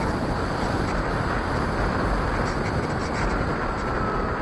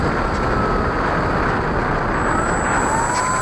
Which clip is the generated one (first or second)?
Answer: first